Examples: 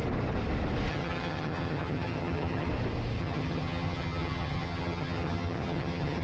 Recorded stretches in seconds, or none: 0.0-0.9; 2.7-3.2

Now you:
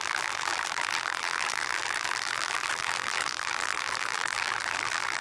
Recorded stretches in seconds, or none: none

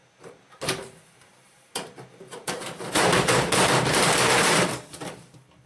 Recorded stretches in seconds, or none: 0.8-1.3; 4.7-5.7

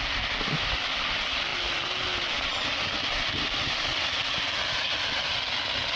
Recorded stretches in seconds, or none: 0.0-6.0

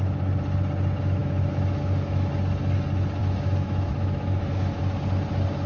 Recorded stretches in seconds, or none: 0.0-1.2; 2.3-3.2; 4.8-5.7

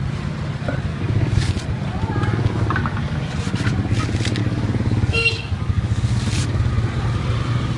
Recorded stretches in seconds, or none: 0.0-0.9; 1.5-2.3; 3.5-4.4; 6.7-7.8